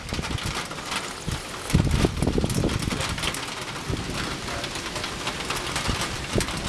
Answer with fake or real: real